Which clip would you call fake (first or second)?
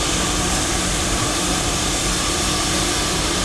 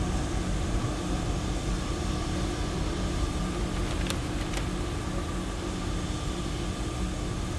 first